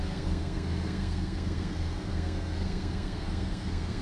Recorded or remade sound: remade